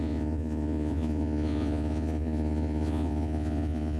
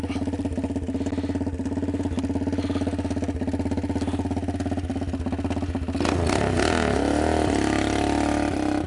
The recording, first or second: second